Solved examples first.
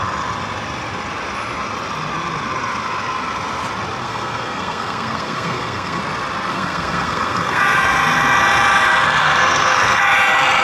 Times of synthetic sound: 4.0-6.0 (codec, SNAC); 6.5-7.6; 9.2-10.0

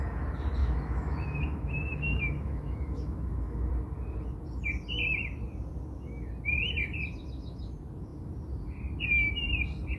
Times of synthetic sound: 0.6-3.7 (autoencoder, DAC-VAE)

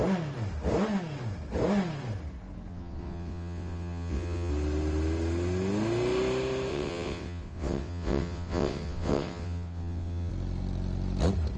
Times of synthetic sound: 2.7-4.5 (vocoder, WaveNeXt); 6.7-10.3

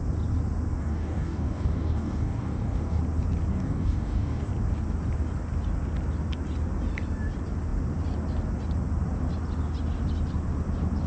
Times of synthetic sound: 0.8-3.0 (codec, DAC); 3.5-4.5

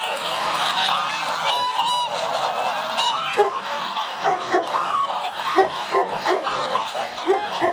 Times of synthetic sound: 0.0-0.9 (codec, DAC); 1.5-1.9; 3.0-7.7

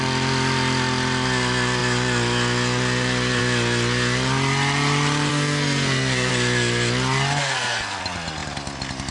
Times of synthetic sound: 5.3-6.3 (codec, SNAC); 7.5-8.0